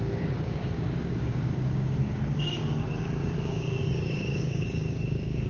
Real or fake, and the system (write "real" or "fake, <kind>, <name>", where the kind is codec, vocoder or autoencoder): fake, codec, DAC